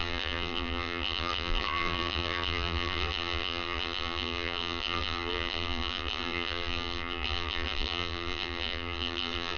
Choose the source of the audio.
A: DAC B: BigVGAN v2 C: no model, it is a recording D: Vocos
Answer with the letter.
B